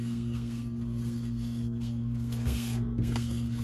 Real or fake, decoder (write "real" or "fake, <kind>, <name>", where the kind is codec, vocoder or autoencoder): fake, codec, SNAC